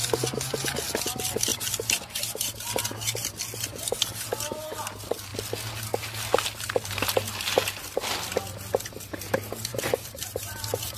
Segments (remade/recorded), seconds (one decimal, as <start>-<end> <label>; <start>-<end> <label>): 0.0-9.7 recorded; 9.7-10.6 remade; 10.6-11.0 recorded